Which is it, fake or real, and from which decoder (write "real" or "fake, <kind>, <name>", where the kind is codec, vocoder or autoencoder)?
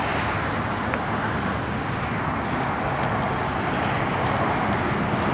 real